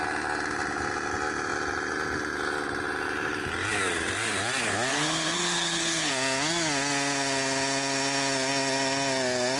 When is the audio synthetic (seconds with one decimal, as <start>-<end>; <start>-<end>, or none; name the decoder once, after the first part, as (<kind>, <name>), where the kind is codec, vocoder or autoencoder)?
4.9-6.1 (codec, HILCodec)